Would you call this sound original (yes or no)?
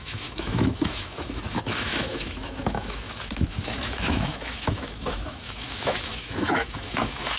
no